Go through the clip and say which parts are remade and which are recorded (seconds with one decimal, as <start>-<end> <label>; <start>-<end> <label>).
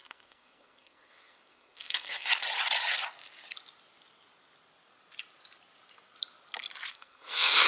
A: 0.0-2.3 remade; 2.3-6.9 recorded; 6.9-7.7 remade